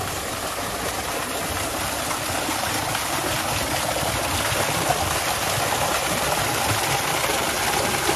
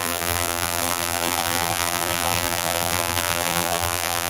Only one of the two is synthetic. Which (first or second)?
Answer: second